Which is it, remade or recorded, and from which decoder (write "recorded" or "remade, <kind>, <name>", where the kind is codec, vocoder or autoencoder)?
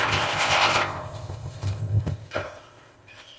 remade, codec, ZipCodec